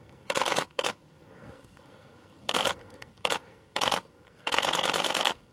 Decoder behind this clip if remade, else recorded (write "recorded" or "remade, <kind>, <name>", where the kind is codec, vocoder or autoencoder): remade, codec, SNAC